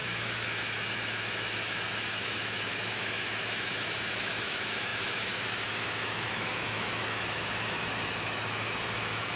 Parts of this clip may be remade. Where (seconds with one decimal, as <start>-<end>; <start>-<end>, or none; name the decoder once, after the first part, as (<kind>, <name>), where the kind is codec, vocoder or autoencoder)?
0.0-9.4 (autoencoder, DAC-VAE)